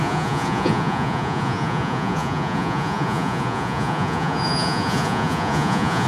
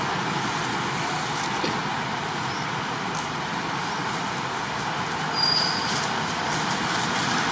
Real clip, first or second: second